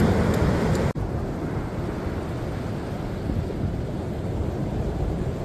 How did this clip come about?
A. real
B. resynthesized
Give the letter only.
A